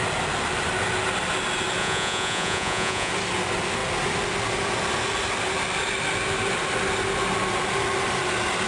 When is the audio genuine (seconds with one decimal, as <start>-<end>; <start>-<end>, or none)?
0.0-1.8; 3.1-8.7

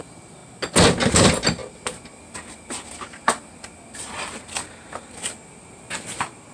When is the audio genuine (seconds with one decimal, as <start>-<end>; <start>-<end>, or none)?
0.0-6.5

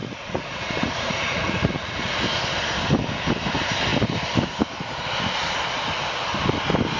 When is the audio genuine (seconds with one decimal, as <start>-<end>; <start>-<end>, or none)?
2.1-7.0